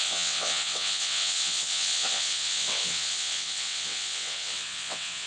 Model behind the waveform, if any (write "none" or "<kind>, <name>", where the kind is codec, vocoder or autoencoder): vocoder, WaveNeXt